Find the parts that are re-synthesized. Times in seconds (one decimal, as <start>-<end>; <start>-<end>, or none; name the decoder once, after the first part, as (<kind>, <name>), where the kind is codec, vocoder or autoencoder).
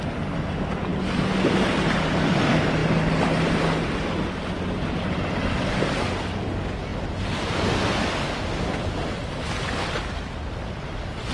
none